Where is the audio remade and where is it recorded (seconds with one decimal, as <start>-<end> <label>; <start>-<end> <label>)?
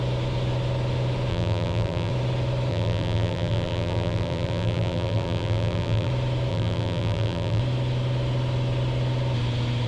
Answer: 0.0-1.3 recorded; 1.3-2.1 remade; 2.1-2.7 recorded; 2.7-6.1 remade; 6.1-6.5 recorded; 6.5-7.6 remade; 7.6-9.9 recorded